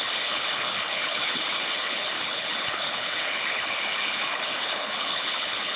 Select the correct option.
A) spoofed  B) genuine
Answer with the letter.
A